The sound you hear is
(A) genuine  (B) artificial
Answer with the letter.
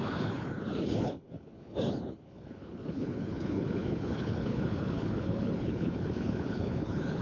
B